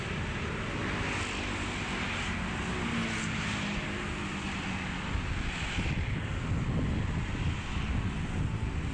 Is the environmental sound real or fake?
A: real